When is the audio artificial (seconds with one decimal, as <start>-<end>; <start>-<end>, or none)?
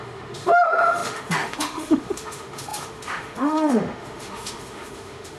0.0-5.4